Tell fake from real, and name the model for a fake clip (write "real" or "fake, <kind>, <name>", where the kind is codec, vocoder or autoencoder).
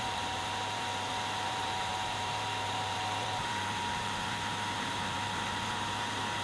fake, vocoder, BigVGAN v2